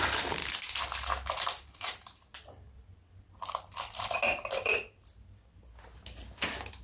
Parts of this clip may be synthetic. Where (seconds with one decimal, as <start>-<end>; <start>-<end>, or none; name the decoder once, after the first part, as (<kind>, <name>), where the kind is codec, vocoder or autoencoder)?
0.0-0.4 (vocoder, BigVGAN v2); 1.3-2.3